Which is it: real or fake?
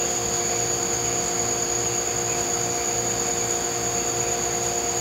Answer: real